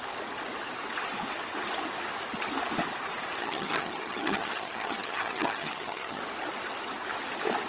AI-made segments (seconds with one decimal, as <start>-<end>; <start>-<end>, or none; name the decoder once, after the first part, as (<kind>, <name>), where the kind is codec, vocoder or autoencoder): 3.4-6.2 (vocoder, HiFi-GAN)